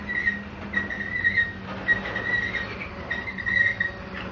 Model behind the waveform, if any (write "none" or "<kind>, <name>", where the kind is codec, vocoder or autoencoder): none